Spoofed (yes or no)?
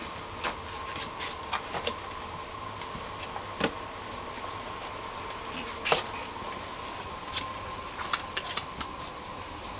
no